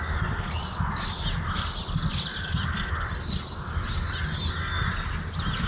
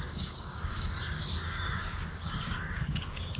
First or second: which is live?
first